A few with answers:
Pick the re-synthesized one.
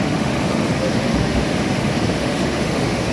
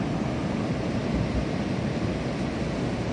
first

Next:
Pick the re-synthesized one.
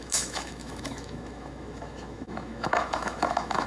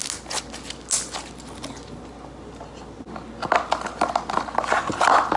first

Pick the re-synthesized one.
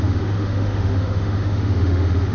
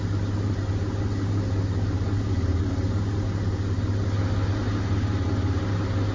first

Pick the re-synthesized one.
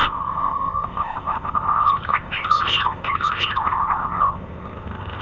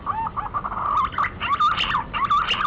first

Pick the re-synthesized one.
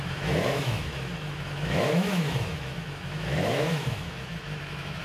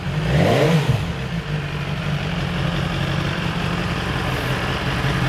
first